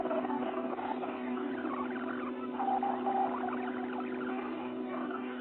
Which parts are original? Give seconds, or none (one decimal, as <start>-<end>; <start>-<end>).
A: 1.5-4.3